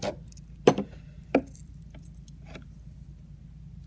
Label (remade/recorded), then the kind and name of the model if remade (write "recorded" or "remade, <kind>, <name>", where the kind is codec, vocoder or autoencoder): recorded